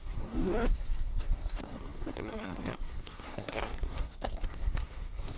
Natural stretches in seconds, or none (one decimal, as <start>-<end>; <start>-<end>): none